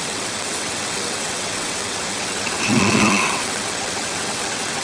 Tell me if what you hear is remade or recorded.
remade